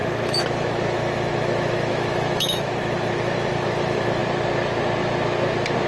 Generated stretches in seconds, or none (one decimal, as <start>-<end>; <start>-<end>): 0.0-4.2